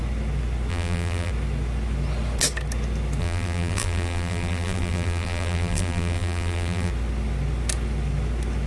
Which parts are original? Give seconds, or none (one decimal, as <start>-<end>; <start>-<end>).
0.0-0.7; 1.3-3.2; 6.9-8.7